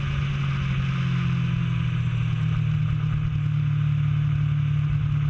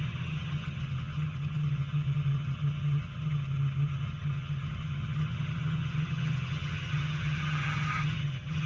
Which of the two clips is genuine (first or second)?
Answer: first